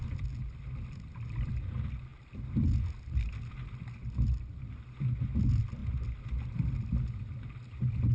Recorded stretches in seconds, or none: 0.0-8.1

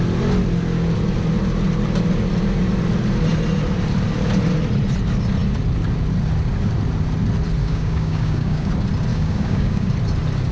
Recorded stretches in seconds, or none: 0.0-7.6; 8.7-9.1; 9.9-10.5

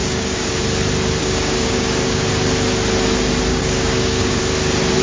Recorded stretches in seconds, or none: 0.6-1.2; 2.3-3.5; 4.4-5.0

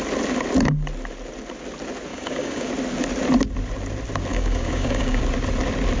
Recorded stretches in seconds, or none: 0.0-2.1; 2.7-4.3; 5.2-6.0

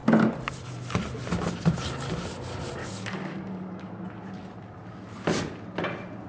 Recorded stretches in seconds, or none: 0.0-2.8; 3.9-6.3

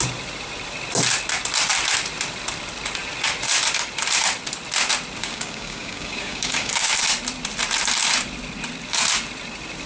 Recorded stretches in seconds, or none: 0.0-5.2; 6.9-9.9

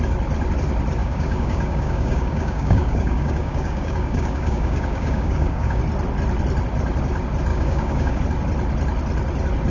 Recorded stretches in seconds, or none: 0.0-1.0; 5.8-7.5; 8.2-9.7